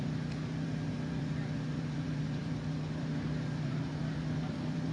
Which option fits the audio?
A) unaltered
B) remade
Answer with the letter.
B